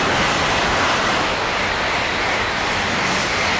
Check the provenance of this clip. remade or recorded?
recorded